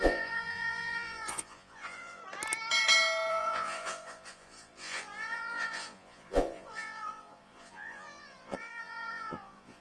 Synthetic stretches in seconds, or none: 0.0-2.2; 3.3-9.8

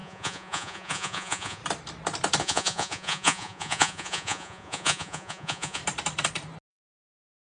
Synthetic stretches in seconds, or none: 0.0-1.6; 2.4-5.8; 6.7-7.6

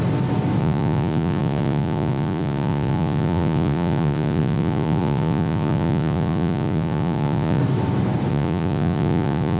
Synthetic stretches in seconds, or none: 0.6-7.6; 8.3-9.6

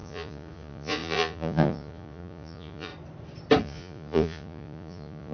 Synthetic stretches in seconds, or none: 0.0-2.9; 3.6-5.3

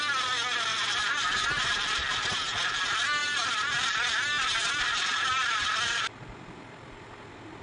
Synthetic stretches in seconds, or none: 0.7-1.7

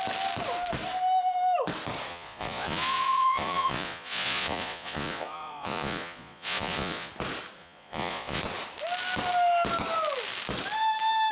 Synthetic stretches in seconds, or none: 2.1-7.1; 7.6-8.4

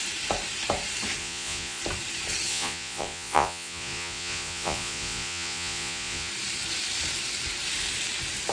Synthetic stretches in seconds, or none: 1.2-1.8; 2.5-6.3

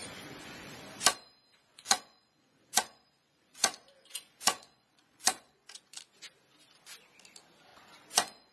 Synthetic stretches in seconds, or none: 0.0-0.9; 1.7-6.0; 7.7-8.5